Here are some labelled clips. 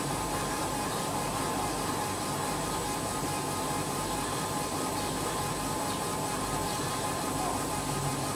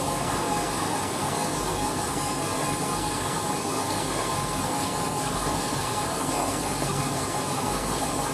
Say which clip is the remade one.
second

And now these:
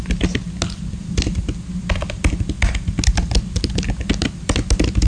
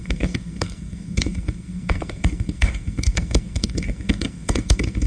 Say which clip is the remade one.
second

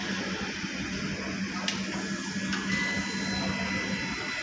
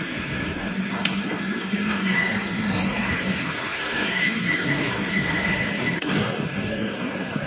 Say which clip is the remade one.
second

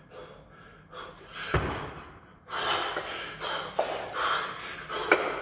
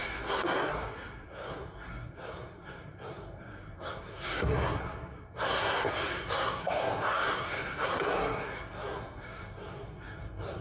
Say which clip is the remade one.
second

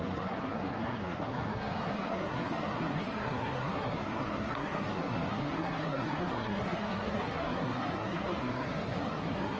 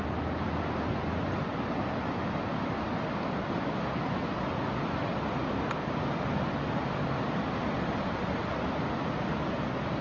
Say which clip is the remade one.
first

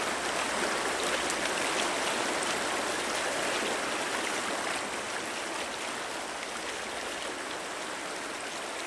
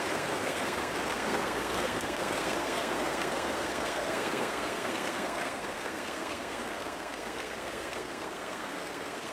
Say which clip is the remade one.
second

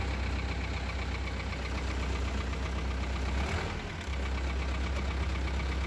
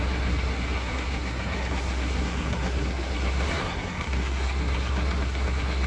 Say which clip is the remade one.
second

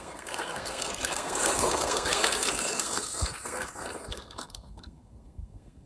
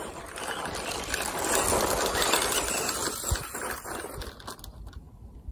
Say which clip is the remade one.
first